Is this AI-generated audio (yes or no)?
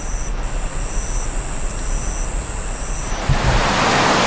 no